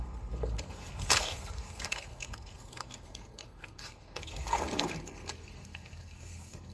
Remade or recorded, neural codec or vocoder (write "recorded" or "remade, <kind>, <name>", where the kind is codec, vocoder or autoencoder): remade, codec, SNAC